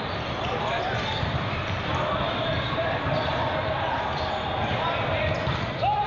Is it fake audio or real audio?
real